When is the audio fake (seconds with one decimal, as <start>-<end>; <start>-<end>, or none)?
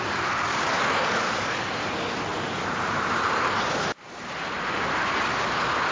2.3-5.0